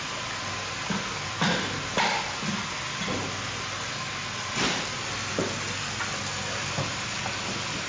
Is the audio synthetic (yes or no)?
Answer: no